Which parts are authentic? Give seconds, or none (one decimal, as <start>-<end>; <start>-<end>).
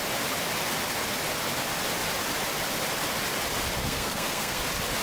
0.0-3.8; 4.6-5.0